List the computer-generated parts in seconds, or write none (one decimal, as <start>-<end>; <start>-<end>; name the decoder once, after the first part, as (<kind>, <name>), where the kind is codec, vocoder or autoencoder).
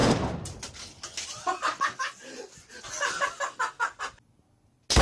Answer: none